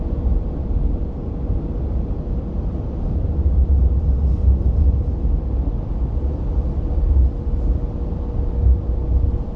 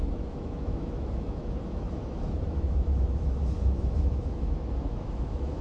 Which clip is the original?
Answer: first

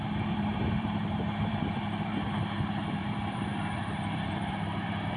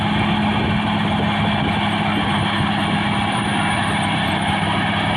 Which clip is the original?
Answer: second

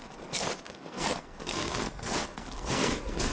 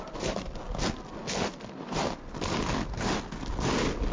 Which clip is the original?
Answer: second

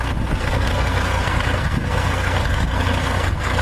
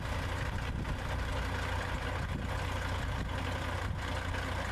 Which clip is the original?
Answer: second